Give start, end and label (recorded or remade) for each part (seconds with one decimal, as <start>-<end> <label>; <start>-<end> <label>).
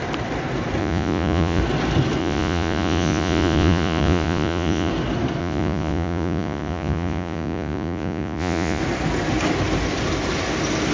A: 0.0-0.8 recorded; 0.8-1.6 remade; 1.6-2.2 recorded; 2.2-4.9 remade; 4.9-5.4 recorded; 5.4-8.8 remade; 8.8-10.9 recorded